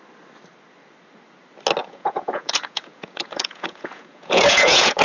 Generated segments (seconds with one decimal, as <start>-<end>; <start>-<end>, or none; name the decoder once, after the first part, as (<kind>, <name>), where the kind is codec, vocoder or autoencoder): 1.8-5.0 (vocoder, Vocos)